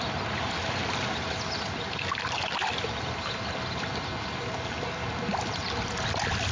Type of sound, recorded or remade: recorded